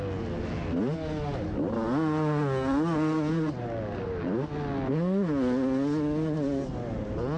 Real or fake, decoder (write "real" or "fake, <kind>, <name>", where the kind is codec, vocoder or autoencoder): real